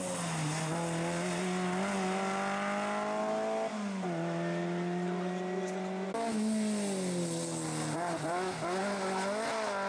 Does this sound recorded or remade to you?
recorded